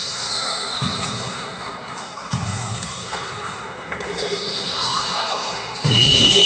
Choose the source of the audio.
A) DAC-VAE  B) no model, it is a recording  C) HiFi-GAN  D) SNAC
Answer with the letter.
D